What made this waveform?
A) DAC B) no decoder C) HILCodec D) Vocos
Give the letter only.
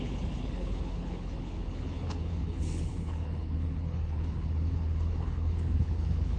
C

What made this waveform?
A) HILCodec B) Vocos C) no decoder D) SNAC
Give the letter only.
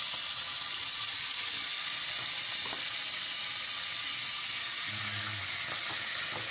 C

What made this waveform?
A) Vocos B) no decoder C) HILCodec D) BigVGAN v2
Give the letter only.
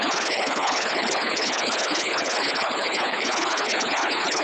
C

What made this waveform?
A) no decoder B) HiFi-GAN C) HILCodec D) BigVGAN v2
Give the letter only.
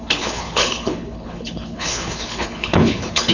C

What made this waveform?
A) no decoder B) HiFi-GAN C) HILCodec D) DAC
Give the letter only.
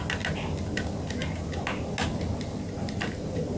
A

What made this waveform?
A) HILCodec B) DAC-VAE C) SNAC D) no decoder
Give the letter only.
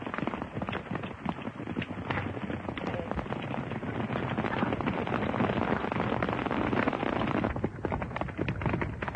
D